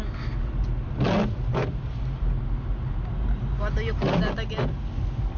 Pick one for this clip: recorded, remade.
recorded